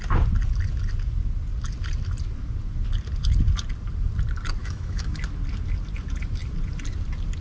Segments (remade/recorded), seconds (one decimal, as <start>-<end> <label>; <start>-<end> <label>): 0.0-4.6 recorded; 4.6-5.2 remade; 5.2-7.4 recorded